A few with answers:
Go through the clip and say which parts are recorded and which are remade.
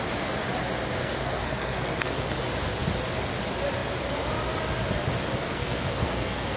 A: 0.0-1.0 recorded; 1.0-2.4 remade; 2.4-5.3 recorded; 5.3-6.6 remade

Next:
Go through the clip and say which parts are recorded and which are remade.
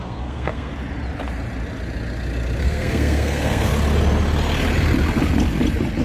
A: 0.0-0.7 remade; 0.7-2.6 recorded; 2.6-3.7 remade; 3.7-6.0 recorded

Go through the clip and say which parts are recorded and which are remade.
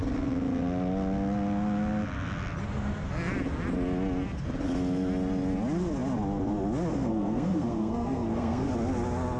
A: 0.0-6.9 recorded; 6.9-8.7 remade; 8.7-9.4 recorded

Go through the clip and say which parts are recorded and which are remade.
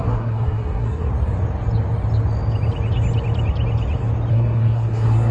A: 0.0-1.1 remade; 1.1-4.3 recorded; 4.3-5.3 remade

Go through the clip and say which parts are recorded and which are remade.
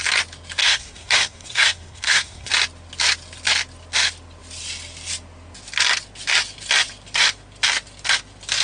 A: 0.0-0.6 recorded; 0.6-2.5 remade; 2.5-8.6 recorded